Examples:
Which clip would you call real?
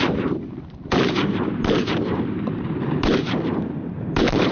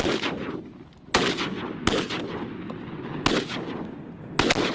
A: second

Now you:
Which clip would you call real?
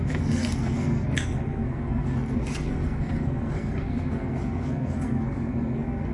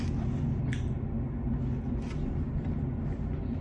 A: second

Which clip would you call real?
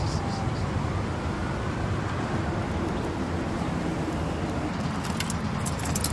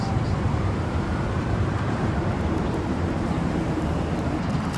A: first